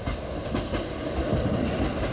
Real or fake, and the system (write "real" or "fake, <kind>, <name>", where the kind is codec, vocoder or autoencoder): real